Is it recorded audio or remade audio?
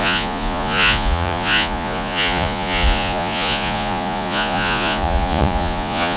remade